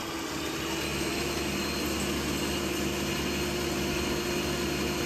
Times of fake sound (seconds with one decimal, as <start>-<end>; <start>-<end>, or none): none